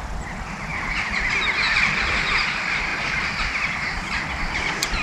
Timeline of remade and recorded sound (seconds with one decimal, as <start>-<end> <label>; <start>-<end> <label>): 0.0-0.7 recorded; 0.7-1.3 remade; 1.3-2.9 recorded; 2.9-4.2 remade; 4.2-5.0 recorded